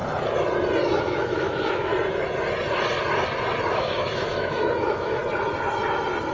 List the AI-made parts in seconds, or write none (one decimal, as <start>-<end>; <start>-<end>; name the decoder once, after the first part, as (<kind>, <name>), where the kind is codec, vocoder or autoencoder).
1.0-1.9 (autoencoder, DAC-VAE); 3.7-5.2